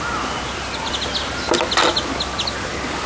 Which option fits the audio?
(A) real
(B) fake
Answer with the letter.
A